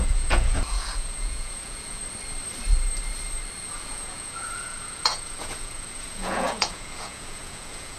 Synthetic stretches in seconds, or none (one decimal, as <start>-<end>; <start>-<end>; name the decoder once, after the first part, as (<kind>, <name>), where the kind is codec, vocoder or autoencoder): 0.0-2.0 (vocoder, Vocos); 3.7-8.0